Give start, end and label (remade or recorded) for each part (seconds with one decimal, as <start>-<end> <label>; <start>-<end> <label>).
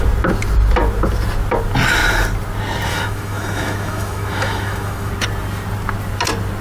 0.0-2.9 recorded; 2.9-5.1 remade; 5.1-6.6 recorded